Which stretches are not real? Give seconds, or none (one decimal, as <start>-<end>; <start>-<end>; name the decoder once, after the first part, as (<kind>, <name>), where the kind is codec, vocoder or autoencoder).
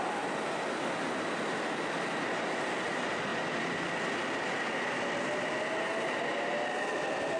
none